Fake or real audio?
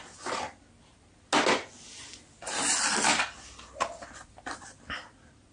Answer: real